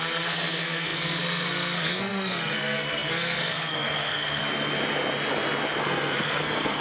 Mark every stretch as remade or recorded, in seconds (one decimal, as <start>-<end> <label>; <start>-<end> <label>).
0.0-4.4 remade; 4.4-5.8 recorded; 5.8-6.8 remade